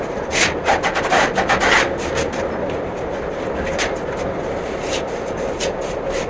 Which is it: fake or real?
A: real